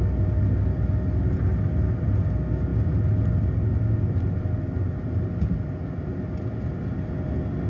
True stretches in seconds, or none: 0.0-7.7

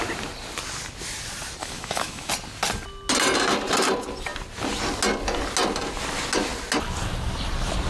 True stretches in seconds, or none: 0.0-1.6; 2.3-7.9